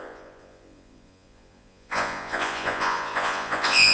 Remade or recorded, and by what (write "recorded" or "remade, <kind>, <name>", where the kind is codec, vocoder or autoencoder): remade, vocoder, Vocos